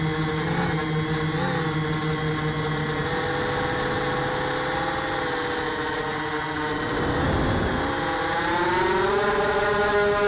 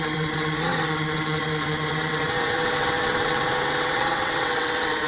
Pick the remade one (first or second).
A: second